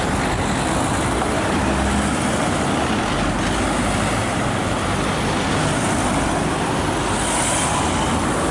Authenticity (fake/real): real